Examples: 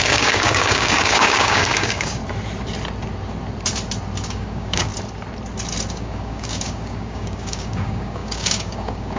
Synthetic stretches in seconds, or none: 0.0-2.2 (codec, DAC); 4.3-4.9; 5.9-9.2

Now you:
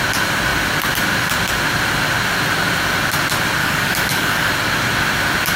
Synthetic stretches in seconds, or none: 3.6-4.5 (codec, DAC)

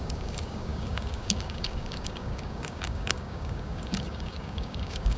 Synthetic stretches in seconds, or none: 0.0-5.2 (codec, DAC)

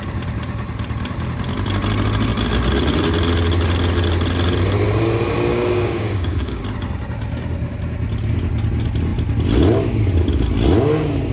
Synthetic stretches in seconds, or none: 5.5-6.6 (codec, DAC)

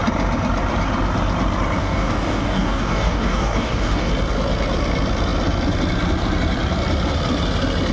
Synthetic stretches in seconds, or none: 1.8-4.1 (codec, DAC)